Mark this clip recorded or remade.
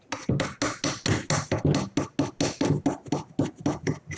recorded